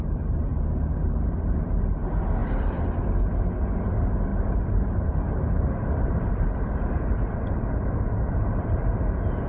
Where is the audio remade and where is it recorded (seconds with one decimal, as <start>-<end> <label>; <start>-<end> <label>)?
0.0-0.5 recorded; 0.5-1.8 remade; 1.8-4.3 recorded; 4.3-6.9 remade; 6.9-9.5 recorded